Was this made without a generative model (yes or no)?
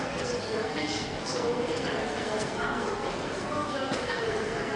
no